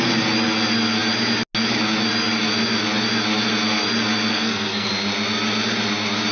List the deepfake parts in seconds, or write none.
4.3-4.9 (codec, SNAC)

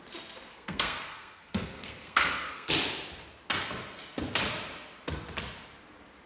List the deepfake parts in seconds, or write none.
0.5-2.7 (codec, SNAC)

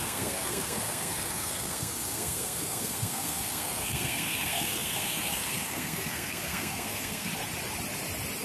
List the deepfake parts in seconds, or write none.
0.0-7.3 (codec, SNAC)